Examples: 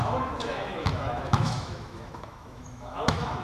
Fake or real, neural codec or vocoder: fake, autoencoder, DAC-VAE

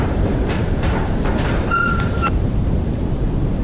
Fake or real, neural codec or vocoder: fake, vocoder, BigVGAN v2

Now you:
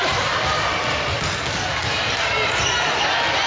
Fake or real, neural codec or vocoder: real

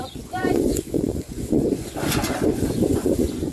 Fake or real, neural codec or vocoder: fake, vocoder, Vocos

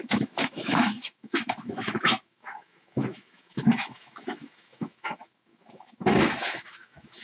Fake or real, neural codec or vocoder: fake, autoencoder, DAC-VAE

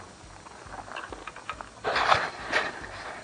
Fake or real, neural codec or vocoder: real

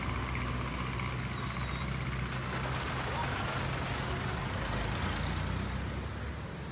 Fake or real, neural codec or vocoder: real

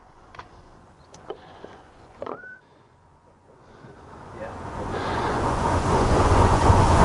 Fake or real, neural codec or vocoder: fake, vocoder, Vocos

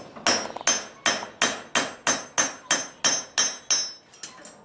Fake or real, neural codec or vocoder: real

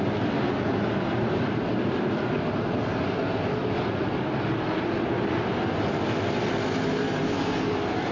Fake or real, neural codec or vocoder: fake, vocoder, BigVGAN v2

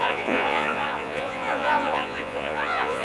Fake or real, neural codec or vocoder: fake, vocoder, Vocos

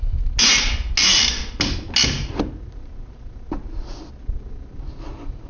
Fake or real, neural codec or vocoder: real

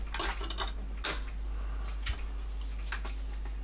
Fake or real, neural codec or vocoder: real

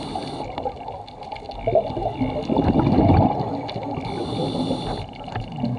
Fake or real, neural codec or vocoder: real